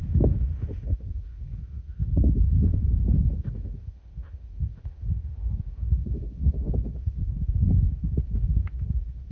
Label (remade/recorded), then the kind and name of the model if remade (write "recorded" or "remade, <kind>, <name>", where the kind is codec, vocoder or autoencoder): remade, autoencoder, DAC-VAE